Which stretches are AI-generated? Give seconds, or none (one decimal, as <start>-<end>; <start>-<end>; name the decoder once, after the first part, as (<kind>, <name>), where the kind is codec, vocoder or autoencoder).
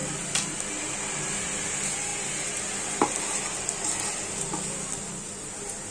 none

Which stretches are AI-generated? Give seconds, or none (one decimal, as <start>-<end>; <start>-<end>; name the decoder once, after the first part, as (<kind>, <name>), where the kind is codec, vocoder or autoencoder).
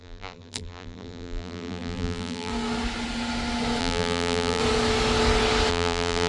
0.0-2.5 (vocoder, BigVGAN v2); 3.8-4.6; 5.7-6.3